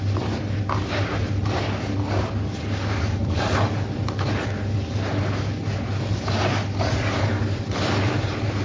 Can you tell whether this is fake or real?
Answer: real